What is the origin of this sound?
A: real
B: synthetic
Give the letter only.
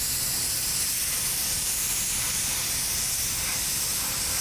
A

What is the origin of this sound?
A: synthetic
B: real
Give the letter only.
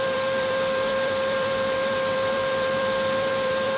A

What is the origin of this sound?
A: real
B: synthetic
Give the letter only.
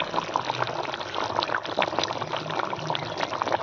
A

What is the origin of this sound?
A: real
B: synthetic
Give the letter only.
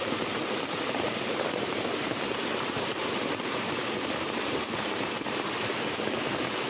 B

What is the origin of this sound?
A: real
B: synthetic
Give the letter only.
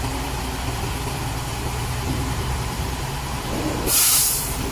B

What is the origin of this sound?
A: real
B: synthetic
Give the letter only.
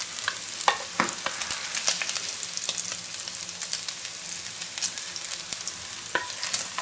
A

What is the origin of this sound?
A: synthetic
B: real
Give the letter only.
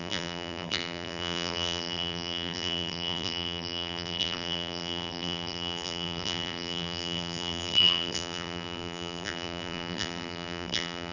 A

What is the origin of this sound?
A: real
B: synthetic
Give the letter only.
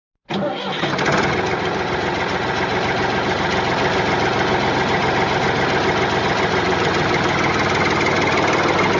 A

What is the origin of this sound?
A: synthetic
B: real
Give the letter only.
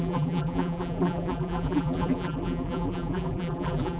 A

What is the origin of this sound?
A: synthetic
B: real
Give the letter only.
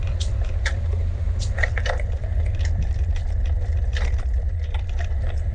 B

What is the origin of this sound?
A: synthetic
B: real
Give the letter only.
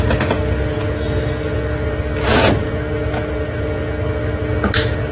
B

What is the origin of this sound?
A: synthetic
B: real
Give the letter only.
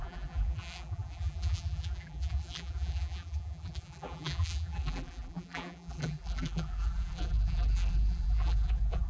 A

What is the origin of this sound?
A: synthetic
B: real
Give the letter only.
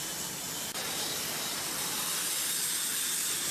B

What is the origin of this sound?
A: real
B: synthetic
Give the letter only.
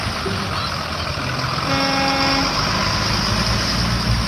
A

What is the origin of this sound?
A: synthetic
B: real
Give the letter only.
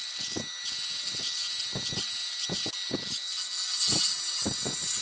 B